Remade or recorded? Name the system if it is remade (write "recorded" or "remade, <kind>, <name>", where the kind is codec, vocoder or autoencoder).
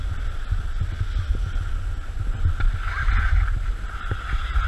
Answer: recorded